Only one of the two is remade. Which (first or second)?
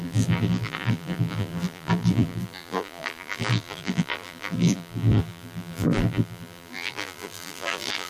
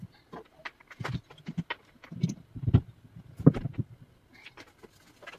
first